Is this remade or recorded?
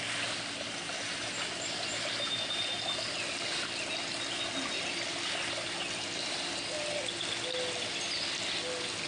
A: recorded